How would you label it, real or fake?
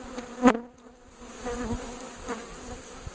real